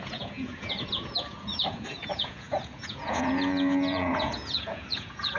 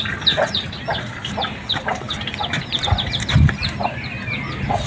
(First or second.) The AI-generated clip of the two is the first